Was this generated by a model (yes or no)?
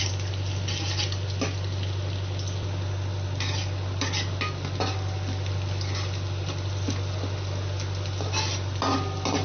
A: no